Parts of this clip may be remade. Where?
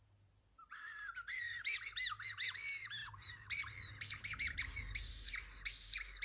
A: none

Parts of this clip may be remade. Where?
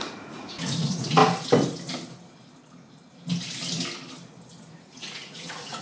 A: 0.0-1.2 (vocoder, Vocos); 4.7-5.8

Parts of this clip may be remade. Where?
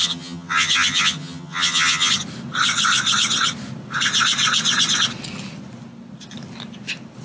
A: 0.0-2.1 (vocoder, HiFi-GAN)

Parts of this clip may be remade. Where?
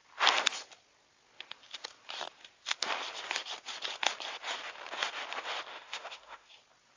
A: 5.7-6.5 (autoencoder, DAC-VAE)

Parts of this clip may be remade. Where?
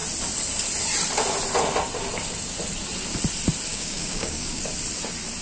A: 3.7-4.6 (codec, DAC)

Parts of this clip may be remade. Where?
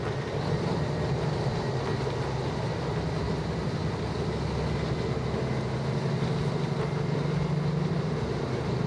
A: 0.0-1.9 (vocoder, BigVGAN v2); 3.2-3.8; 7.9-8.9